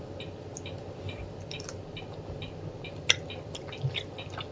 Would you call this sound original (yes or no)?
yes